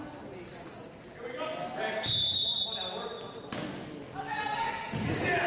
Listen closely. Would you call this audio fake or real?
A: real